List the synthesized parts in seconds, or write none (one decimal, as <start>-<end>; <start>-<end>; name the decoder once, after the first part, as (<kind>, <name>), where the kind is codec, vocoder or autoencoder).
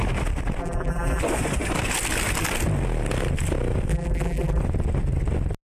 0.6-1.2 (vocoder, BigVGAN v2); 3.9-4.6